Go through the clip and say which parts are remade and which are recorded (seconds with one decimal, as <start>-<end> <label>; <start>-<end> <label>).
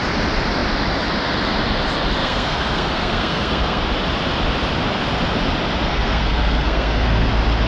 0.0-2.2 recorded; 2.2-3.8 remade; 3.8-5.9 recorded; 5.9-7.3 remade; 7.3-7.7 recorded